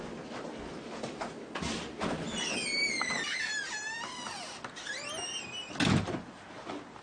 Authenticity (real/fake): real